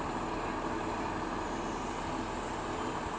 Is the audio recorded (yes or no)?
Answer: yes